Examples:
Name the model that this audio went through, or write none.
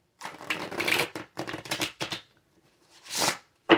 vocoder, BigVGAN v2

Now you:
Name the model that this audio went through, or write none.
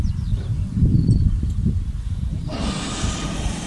vocoder, BigVGAN v2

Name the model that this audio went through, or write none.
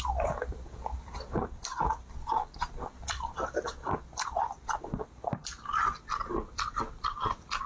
vocoder, BigVGAN v2